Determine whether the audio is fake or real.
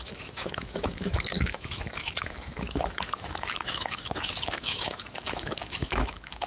fake